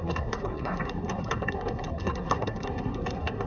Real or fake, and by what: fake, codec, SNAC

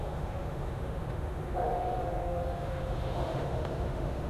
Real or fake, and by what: fake, autoencoder, DAC-VAE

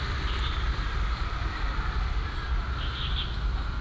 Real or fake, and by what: real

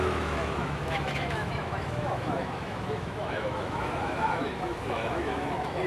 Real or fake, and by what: fake, autoencoder, DAC-VAE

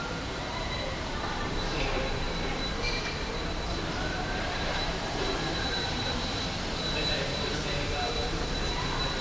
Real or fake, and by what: fake, vocoder, BigVGAN v2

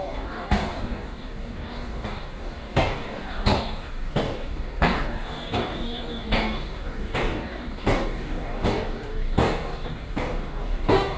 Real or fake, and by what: fake, codec, DAC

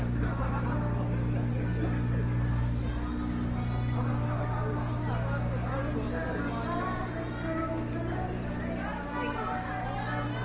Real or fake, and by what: real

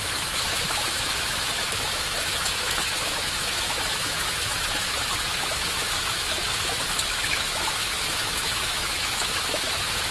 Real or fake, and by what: fake, autoencoder, DAC-VAE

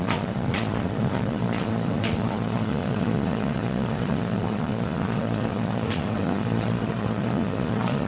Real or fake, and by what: fake, vocoder, Vocos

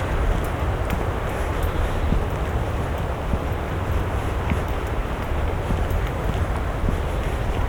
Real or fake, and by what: real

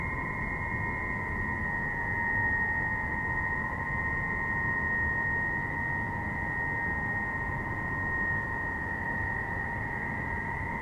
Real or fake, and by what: real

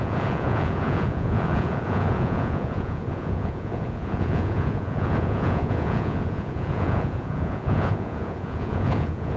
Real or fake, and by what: fake, vocoder, Vocos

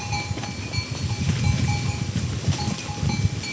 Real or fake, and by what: real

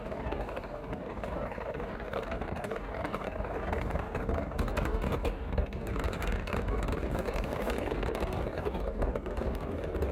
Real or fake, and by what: fake, codec, DAC